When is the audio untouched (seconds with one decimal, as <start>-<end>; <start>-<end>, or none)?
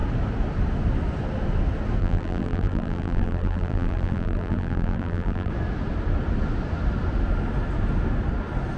0.0-2.0; 5.5-8.8